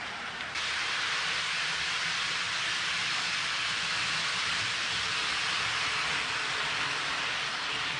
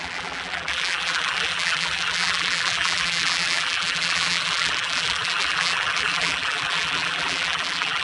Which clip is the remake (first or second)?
second